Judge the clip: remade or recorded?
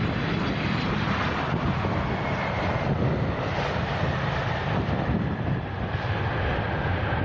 recorded